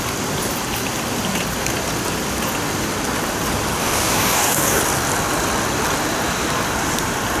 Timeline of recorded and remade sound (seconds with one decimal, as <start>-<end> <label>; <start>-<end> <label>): 0.0-3.8 recorded; 3.8-4.8 remade; 4.8-7.4 recorded